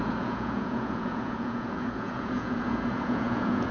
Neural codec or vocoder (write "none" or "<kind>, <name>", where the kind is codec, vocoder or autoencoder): vocoder, Vocos